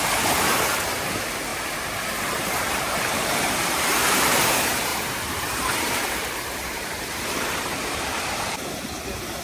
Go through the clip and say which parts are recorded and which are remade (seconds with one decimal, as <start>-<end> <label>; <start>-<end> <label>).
0.0-9.4 remade